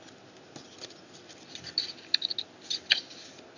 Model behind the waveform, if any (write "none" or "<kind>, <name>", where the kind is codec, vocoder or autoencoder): none